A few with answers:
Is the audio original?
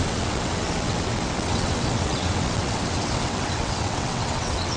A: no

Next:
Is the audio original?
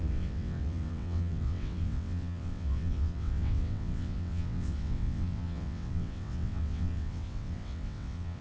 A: no